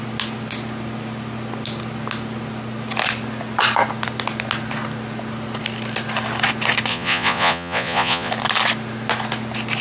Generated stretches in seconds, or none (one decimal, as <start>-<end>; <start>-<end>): 6.9-8.3